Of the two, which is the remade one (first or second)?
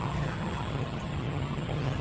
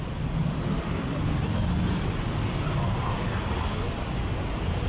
first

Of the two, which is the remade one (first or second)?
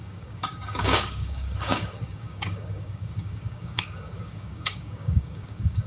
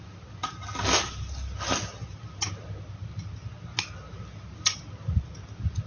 first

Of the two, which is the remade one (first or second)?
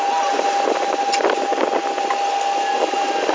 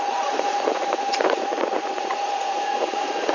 second